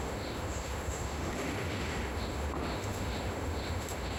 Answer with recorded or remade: remade